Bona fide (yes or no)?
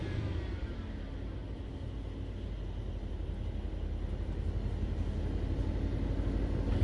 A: yes